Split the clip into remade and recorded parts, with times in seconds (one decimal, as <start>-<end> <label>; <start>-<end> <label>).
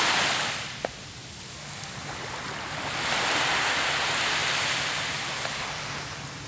0.0-1.2 recorded; 1.2-1.9 remade; 1.9-4.4 recorded; 4.4-5.8 remade; 5.8-6.5 recorded